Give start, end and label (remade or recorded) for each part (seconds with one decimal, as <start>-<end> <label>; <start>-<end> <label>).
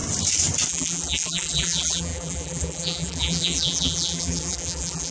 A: 0.0-0.7 recorded; 0.7-5.1 remade